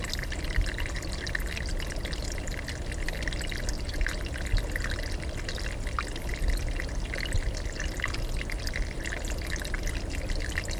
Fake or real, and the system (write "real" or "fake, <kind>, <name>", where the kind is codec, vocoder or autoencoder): real